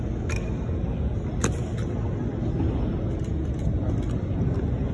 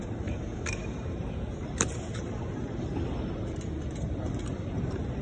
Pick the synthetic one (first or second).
second